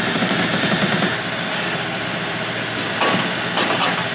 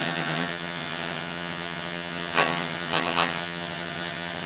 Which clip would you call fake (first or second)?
second